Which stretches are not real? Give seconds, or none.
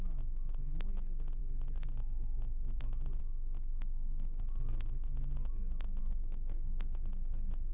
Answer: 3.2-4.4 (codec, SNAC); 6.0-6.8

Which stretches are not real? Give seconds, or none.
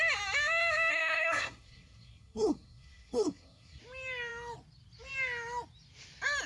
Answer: 0.9-3.8 (codec, SNAC)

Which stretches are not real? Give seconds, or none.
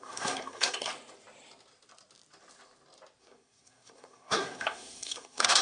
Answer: 0.0-0.9 (codec, SNAC); 3.2-5.6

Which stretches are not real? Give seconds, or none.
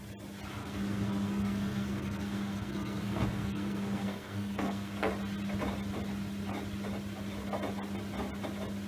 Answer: 0.6-5.1 (codec, SNAC)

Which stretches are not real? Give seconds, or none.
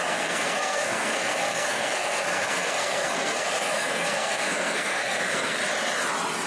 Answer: 0.0-5.6 (codec, SNAC)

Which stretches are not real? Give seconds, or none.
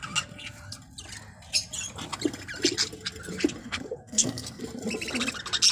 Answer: 3.6-4.6 (codec, SNAC)